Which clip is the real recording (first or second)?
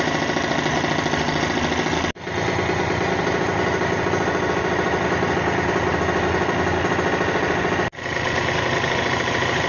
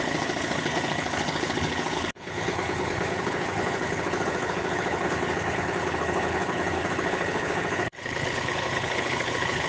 first